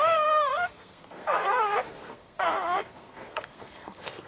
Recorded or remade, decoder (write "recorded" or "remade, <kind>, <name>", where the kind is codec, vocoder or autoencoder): remade, codec, SNAC